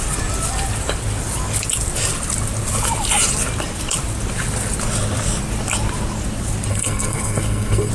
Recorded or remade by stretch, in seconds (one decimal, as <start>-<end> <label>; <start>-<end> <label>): 0.0-6.7 recorded; 6.7-7.9 remade